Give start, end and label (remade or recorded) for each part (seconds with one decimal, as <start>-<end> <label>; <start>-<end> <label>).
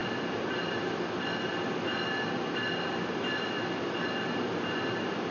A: 0.0-5.3 recorded